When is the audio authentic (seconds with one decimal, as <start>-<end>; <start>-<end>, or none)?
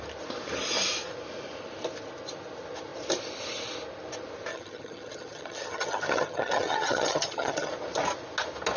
0.0-4.5; 7.7-8.8